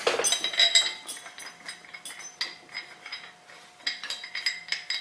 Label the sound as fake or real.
real